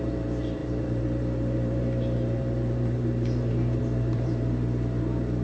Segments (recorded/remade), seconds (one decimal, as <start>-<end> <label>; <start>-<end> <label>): 0.0-5.4 remade